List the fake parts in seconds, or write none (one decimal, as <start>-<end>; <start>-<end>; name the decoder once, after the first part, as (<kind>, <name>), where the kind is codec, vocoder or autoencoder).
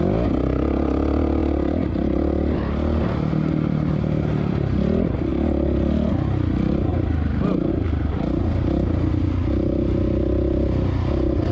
none